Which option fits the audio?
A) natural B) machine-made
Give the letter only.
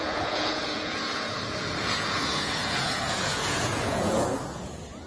B